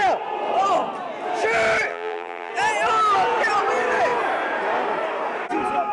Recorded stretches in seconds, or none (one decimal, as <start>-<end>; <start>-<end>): 0.0-1.9; 2.5-5.9